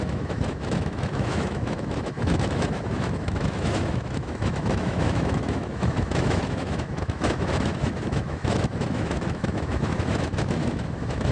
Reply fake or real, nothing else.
fake